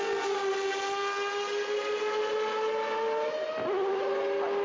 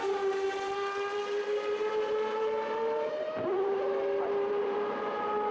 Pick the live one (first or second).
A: first